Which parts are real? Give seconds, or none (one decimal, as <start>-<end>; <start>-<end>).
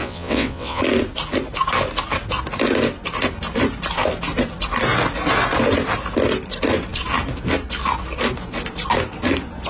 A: 0.8-9.7